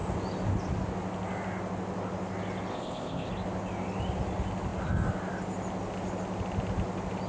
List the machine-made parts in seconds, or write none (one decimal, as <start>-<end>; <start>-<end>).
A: 2.7-3.3